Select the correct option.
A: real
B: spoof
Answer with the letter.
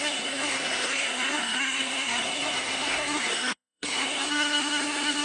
B